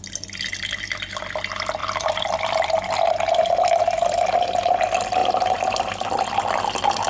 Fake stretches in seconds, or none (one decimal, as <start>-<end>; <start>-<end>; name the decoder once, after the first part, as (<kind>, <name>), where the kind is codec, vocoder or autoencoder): 1.8-3.1 (vocoder, BigVGAN v2)